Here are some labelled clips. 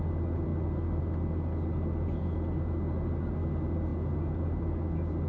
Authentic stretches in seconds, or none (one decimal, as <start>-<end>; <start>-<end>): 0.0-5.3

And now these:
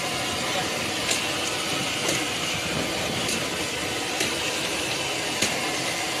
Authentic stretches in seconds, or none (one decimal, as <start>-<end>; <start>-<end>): 0.0-6.2

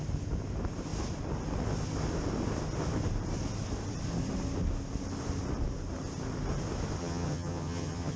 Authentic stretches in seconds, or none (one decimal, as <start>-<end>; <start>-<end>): 0.0-7.0

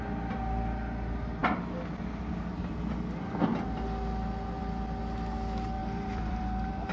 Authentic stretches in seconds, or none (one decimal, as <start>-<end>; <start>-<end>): 0.0-5.8; 6.4-6.9

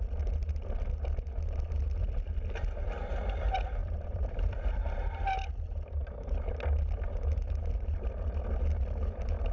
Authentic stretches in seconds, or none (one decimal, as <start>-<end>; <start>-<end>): 0.0-3.8; 4.8-9.5

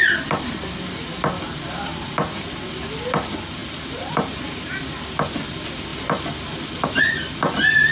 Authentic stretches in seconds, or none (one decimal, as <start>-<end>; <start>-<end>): 0.0-3.6; 4.8-7.9